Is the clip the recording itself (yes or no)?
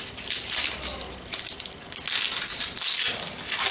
yes